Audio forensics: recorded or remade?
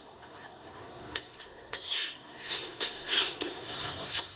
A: remade